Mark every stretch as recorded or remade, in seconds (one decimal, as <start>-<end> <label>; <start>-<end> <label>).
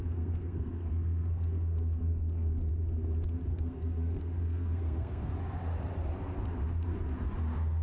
0.0-2.7 remade; 2.7-3.5 recorded; 3.5-5.3 remade; 5.3-7.8 recorded